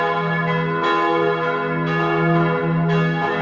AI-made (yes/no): no